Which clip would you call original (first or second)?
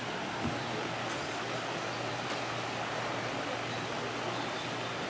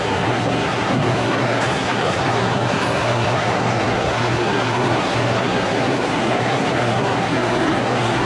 first